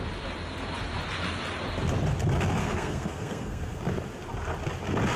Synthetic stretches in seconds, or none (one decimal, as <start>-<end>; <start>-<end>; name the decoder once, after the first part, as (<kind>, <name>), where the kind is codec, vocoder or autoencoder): 2.6-3.8 (codec, SNAC)